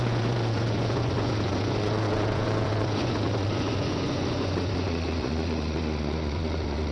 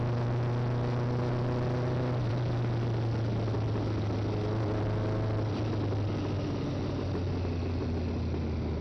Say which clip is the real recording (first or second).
second